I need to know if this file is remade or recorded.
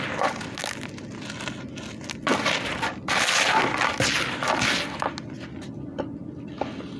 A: recorded